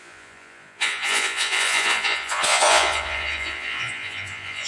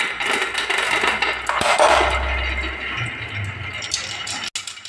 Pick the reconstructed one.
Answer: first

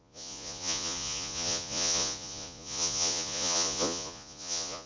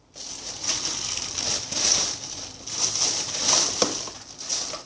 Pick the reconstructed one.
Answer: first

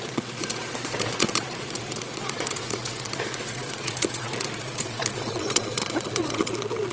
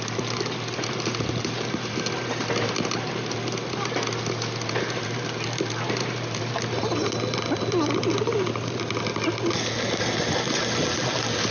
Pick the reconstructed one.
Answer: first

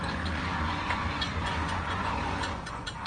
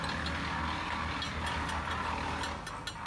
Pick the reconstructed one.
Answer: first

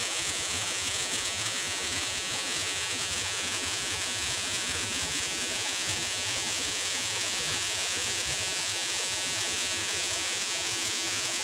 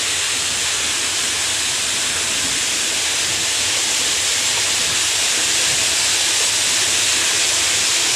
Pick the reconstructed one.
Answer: first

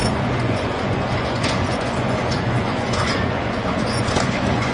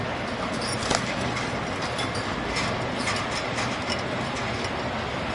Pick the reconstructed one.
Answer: first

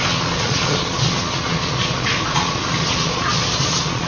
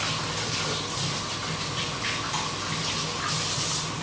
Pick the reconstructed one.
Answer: first